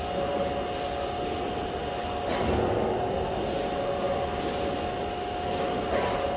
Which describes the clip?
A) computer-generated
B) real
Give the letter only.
B